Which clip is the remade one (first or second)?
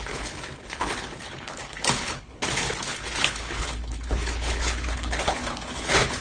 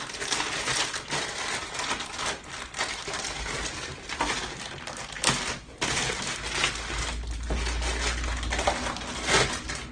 first